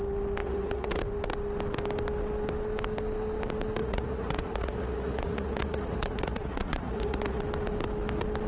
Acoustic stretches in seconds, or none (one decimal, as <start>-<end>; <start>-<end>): 0.0-0.4; 1.0-3.8; 7.4-8.5